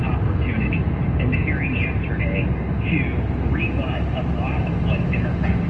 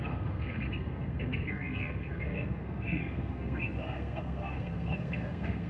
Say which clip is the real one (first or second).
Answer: first